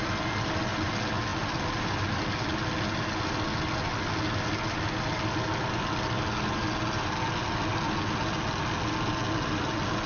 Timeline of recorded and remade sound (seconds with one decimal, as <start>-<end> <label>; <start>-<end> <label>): 0.0-10.1 recorded